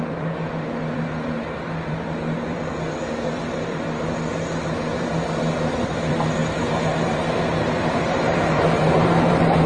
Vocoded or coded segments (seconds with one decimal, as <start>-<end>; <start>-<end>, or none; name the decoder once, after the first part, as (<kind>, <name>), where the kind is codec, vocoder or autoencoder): 0.0-9.7 (vocoder, BigVGAN v2)

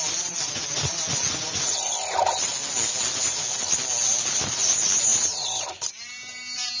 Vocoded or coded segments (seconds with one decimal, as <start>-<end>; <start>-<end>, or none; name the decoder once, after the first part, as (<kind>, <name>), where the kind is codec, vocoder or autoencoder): 5.1-6.8 (vocoder, BigVGAN v2)